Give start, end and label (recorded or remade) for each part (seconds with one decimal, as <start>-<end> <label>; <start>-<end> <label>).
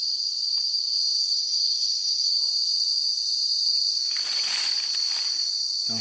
0.0-1.2 recorded; 1.2-2.4 remade; 2.4-6.0 recorded